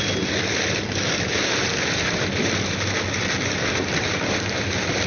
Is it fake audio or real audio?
fake